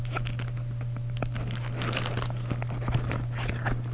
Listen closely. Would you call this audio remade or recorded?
recorded